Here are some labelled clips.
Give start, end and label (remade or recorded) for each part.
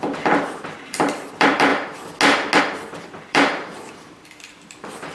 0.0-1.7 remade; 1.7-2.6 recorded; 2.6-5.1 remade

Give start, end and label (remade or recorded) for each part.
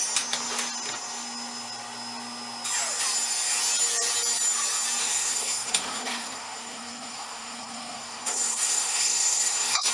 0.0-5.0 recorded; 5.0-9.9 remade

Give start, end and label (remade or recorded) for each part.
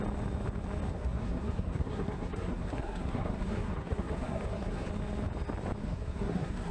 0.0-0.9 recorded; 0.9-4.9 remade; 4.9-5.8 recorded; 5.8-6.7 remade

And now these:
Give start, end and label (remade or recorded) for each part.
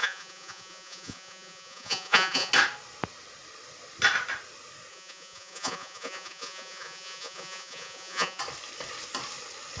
0.0-2.5 remade; 2.5-4.9 recorded; 4.9-8.4 remade; 8.4-9.8 recorded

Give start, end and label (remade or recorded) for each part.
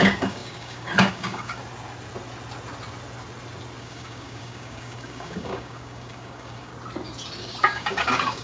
0.0-1.6 remade; 1.6-3.8 recorded; 3.8-6.7 remade; 6.7-7.4 recorded; 7.4-8.4 remade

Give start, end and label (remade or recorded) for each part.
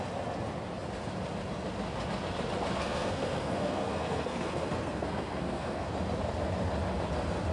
0.0-2.8 recorded; 2.8-5.9 remade; 5.9-7.5 recorded